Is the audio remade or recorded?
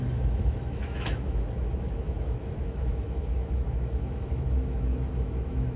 remade